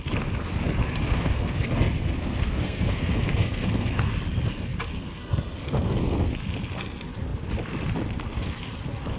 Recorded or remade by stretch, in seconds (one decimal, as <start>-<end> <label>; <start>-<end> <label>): 0.0-0.8 recorded; 0.8-4.1 remade; 4.1-4.9 recorded; 4.9-6.3 remade; 6.3-9.2 recorded